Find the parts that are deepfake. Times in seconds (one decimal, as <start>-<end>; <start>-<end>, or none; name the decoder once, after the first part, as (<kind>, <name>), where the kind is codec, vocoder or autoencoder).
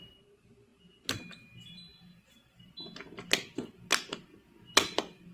none